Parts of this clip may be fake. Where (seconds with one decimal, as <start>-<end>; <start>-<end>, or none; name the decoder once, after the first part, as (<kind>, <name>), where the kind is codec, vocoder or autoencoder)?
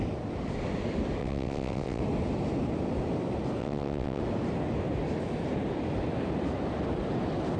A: 1.2-2.0 (vocoder, WaveNeXt); 3.6-4.2